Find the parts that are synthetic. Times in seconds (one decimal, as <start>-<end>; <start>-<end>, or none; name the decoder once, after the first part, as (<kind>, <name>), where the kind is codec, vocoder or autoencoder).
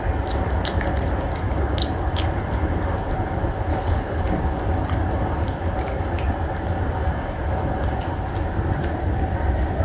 3.7-4.2 (codec, HILCodec)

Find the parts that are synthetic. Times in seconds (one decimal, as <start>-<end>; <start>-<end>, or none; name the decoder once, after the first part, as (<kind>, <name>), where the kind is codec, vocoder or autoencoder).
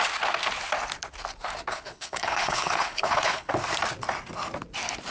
1.7-3.5 (codec, HILCodec)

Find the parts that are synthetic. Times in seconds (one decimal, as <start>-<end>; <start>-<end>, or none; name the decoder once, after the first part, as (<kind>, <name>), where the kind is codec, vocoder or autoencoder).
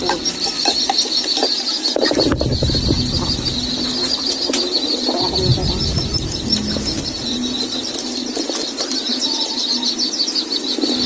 none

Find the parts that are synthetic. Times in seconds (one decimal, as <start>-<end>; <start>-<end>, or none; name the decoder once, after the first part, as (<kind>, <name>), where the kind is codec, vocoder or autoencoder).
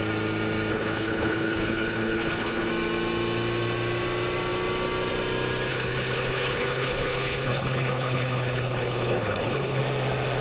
0.7-2.7 (codec, HILCodec); 5.7-9.8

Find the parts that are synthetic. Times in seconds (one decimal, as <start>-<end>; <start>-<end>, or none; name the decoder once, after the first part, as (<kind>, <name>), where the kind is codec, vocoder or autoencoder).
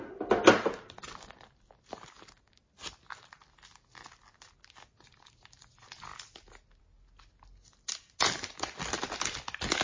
none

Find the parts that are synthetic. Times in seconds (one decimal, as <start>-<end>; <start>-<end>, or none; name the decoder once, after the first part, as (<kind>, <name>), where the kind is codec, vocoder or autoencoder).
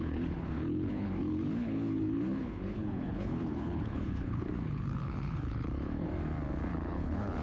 0.0-6.1 (codec, HILCodec); 6.7-7.4